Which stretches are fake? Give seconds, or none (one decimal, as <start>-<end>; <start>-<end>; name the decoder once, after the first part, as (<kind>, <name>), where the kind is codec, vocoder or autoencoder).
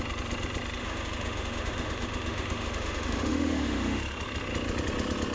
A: 0.8-4.0 (autoencoder, DAC-VAE)